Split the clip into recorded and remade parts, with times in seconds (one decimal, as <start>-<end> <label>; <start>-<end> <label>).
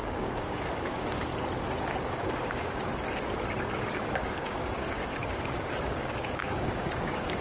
0.0-1.3 remade; 1.3-2.0 recorded; 2.0-2.9 remade; 2.9-3.7 recorded; 3.7-7.4 remade